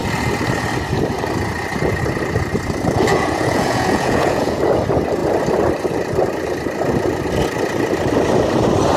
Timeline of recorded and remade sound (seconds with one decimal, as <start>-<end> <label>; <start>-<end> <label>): 0.0-3.1 recorded; 3.1-4.6 remade; 4.6-9.0 recorded